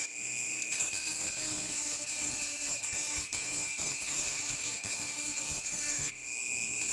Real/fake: fake